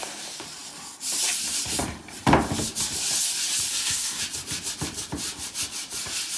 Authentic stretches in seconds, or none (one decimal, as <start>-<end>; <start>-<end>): 0.0-3.7; 4.2-6.4